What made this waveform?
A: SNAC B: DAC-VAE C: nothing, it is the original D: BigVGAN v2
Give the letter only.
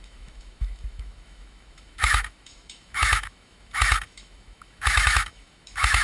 B